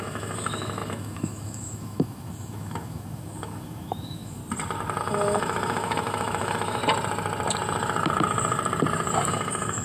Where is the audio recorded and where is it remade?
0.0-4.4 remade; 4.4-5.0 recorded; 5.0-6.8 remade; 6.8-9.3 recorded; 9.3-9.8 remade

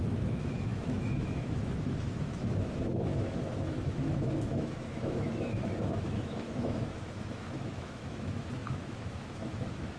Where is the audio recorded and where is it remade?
0.0-10.0 remade

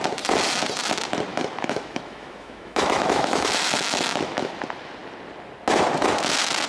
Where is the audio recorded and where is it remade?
0.0-1.3 recorded; 1.3-4.5 remade; 4.5-6.7 recorded

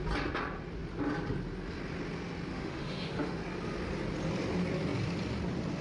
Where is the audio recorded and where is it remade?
0.0-2.5 recorded; 2.5-3.4 remade; 3.4-5.8 recorded

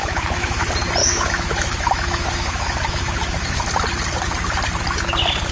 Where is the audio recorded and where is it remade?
0.0-0.6 remade; 0.6-1.0 recorded; 1.0-3.6 remade; 3.6-5.5 recorded